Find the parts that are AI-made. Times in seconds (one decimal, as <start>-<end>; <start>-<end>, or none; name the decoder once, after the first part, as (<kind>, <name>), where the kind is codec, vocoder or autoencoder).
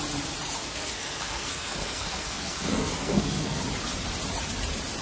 0.6-3.6 (codec, SNAC)